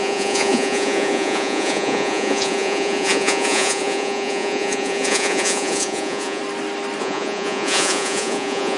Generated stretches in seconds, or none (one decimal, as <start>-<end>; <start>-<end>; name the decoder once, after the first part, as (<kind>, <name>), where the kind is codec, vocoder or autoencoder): 0.0-6.4 (vocoder, Vocos); 7.0-8.8